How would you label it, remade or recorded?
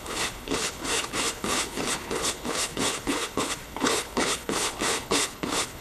remade